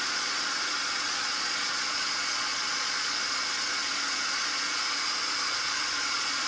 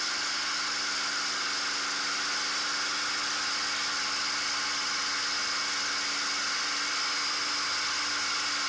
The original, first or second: second